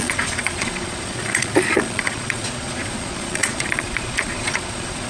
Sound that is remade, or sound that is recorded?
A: remade